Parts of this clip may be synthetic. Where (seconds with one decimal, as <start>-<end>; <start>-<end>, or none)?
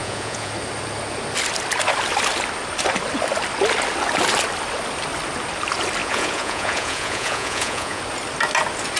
0.0-0.5; 6.0-8.0